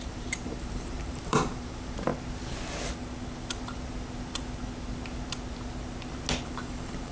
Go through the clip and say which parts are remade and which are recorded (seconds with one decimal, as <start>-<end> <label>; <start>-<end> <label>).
0.0-2.1 remade; 2.1-6.4 recorded; 6.4-7.1 remade